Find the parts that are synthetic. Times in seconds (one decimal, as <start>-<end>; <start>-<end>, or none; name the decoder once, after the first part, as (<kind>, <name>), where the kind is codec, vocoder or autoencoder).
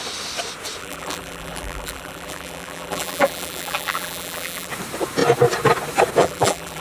0.8-4.7 (vocoder, BigVGAN v2); 6.2-6.8